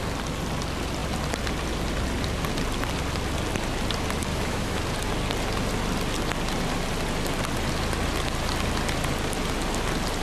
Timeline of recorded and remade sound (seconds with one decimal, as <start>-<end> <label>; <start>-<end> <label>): 0.0-4.3 recorded; 4.3-4.8 remade; 4.8-10.2 recorded